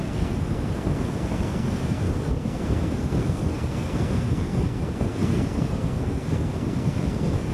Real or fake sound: fake